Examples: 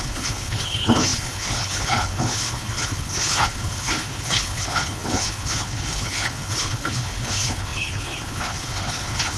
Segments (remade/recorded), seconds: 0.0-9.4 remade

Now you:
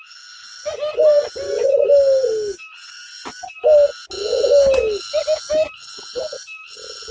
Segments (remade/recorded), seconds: 0.0-7.1 recorded

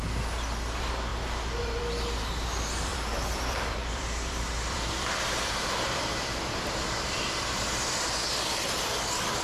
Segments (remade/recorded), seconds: 0.0-2.9 recorded; 2.9-8.1 remade; 8.1-9.4 recorded

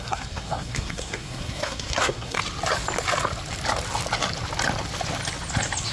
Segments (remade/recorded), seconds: 0.0-2.4 remade; 2.4-5.9 recorded